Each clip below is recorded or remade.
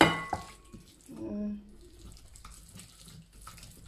recorded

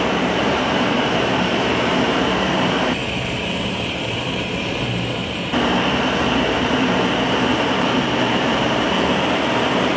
remade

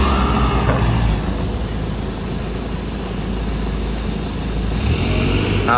recorded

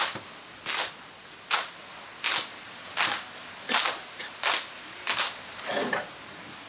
recorded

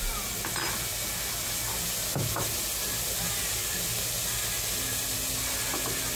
recorded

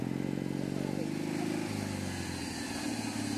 recorded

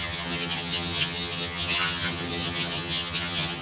remade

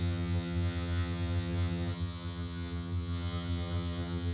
remade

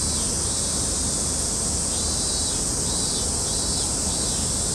recorded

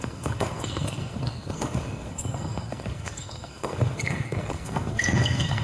remade